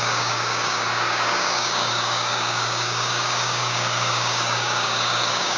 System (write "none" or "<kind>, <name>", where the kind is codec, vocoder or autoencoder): codec, DAC